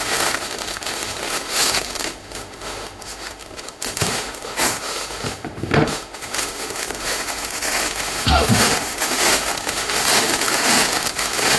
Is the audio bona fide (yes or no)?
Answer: no